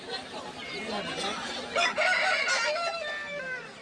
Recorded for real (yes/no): no